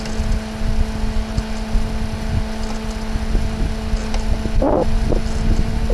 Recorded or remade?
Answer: recorded